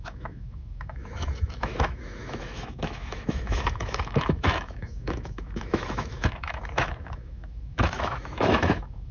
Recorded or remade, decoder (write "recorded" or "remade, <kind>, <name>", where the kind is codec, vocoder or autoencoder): remade, autoencoder, DAC-VAE